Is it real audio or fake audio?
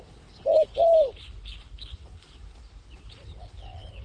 fake